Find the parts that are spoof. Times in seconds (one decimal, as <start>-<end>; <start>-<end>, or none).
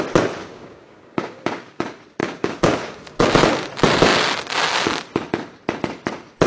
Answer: 0.4-1.8; 2.2-3.3